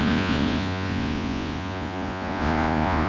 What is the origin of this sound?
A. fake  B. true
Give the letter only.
A